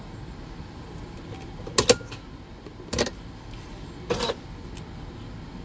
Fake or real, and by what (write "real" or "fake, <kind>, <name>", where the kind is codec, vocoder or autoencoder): real